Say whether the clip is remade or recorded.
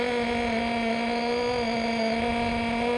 recorded